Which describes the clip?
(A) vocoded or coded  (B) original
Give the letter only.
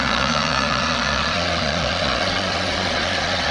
A